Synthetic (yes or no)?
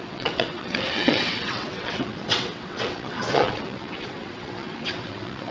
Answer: yes